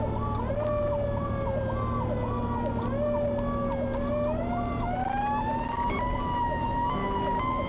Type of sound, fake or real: real